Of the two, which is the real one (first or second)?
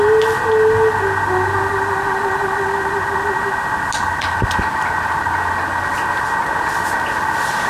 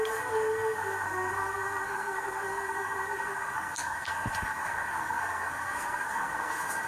first